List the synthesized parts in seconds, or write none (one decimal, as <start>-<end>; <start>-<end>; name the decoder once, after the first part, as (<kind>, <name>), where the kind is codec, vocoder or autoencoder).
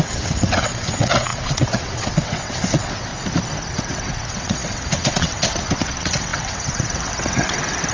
0.0-3.1 (vocoder, WaveNeXt); 3.7-7.9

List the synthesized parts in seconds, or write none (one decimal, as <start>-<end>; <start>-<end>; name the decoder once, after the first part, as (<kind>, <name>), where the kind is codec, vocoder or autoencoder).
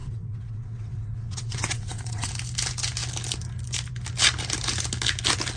0.0-2.3 (vocoder, WaveNeXt)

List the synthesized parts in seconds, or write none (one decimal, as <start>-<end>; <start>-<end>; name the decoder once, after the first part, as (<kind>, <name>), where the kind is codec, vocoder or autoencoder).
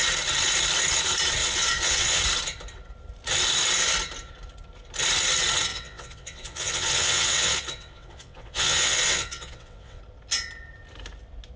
1.4-2.2 (vocoder, WaveNeXt); 5.7-10.0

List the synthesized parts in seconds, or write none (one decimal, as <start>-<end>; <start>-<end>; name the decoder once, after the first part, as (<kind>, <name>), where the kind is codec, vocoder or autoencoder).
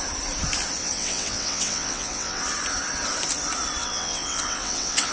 0.8-2.4 (vocoder, WaveNeXt); 3.8-5.1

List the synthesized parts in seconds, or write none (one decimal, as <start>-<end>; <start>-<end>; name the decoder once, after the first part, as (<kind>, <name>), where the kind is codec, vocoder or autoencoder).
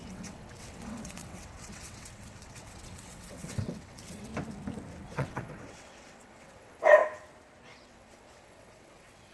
0.0-4.3 (vocoder, WaveNeXt); 5.1-7.0; 7.8-9.3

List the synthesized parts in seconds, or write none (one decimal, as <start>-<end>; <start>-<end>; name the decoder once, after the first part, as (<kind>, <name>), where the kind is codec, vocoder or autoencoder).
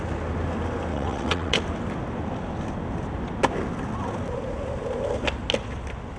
0.9-1.6 (vocoder, WaveNeXt)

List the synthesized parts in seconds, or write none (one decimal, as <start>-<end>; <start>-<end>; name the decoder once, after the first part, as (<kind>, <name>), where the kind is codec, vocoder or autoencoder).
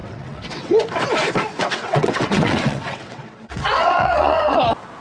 0.0-0.8 (vocoder, WaveNeXt); 1.6-4.6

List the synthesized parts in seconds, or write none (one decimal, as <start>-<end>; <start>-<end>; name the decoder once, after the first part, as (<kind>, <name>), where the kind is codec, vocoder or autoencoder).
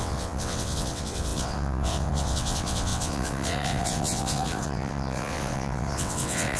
0.0-6.6 (vocoder, WaveNeXt)